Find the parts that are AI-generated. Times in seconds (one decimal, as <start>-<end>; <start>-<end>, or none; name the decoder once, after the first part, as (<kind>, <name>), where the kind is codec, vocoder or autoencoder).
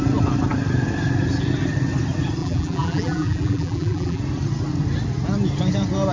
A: 2.4-4.2 (vocoder, BigVGAN v2)